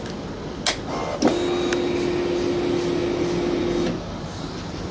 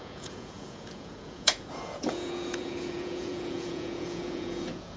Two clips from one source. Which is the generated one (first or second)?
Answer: second